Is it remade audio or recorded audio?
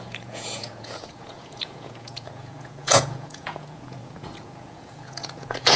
remade